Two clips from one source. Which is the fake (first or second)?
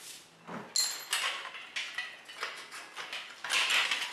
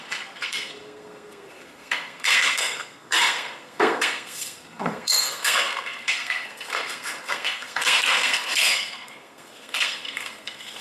second